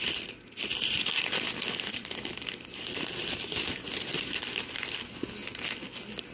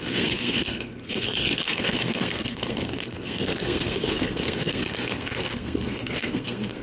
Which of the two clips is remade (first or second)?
second